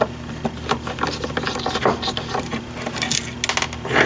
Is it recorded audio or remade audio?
recorded